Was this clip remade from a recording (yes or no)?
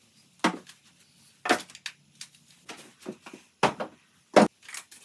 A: no